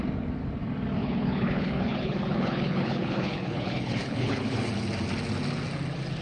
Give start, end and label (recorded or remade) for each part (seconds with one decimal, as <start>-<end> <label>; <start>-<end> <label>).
0.0-1.0 recorded; 1.0-4.7 remade; 4.7-6.2 recorded

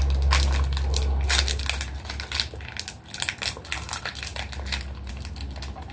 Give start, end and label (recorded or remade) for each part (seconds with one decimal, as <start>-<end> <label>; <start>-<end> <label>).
0.0-5.9 recorded

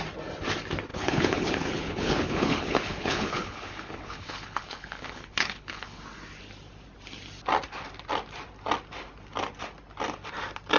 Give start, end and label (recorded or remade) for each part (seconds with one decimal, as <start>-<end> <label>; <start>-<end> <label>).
0.0-0.9 recorded; 0.9-6.0 remade; 6.0-10.8 recorded

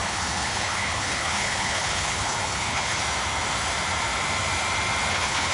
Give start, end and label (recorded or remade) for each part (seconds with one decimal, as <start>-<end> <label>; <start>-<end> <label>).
0.0-3.0 remade; 3.0-5.1 recorded; 5.1-5.5 remade

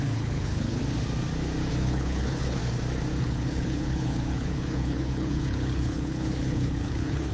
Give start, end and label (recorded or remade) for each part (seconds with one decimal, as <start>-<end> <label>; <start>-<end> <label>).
0.0-0.8 remade; 0.8-1.7 recorded; 1.7-2.6 remade; 2.6-3.2 recorded; 3.2-7.3 remade

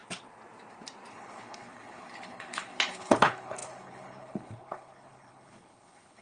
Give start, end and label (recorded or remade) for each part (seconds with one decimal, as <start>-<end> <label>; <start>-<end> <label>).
0.0-1.1 recorded; 1.1-6.2 remade

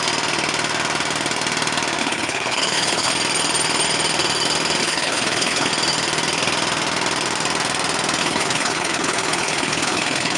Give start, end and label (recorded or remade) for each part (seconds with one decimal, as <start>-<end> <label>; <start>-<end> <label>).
0.0-2.0 recorded; 2.0-3.1 remade; 3.1-4.8 recorded; 4.8-5.7 remade; 5.7-8.2 recorded; 8.2-10.4 remade